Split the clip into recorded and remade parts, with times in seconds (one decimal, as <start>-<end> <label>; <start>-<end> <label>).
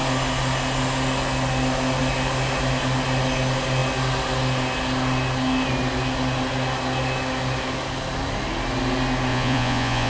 0.0-9.3 recorded; 9.3-10.1 remade